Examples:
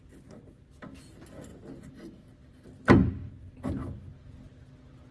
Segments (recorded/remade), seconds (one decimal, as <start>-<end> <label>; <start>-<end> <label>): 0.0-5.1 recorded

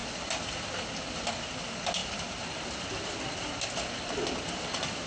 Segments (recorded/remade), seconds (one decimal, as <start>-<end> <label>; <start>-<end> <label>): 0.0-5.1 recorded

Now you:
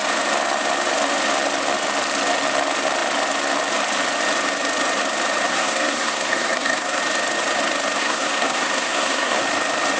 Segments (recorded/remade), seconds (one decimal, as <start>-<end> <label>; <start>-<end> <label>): 0.0-5.5 recorded; 5.5-7.0 remade; 7.0-8.0 recorded; 8.0-9.4 remade; 9.4-10.0 recorded